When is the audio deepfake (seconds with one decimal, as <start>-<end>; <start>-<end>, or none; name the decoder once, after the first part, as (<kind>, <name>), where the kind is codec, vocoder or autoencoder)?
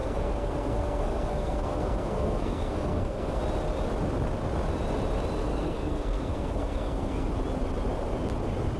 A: 0.0-3.4 (codec, SNAC); 5.4-7.3